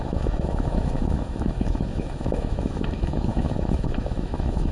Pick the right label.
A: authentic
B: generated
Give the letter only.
B